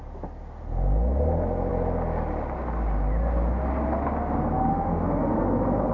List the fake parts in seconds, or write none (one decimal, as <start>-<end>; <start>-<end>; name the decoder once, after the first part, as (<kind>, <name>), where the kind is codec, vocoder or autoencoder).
4.7-5.4 (autoencoder, DAC-VAE)

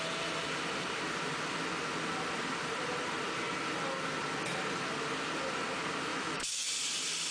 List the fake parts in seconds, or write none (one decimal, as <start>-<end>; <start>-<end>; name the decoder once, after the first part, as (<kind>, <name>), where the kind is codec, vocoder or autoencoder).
6.1-6.7 (autoencoder, DAC-VAE)